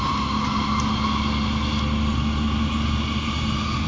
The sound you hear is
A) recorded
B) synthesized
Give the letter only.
A